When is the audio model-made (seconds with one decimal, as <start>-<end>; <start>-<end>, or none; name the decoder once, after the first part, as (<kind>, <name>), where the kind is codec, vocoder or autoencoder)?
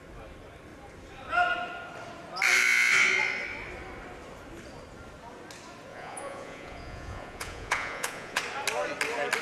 5.9-8.4 (vocoder, Vocos)